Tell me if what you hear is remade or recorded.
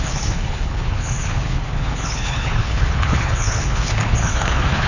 remade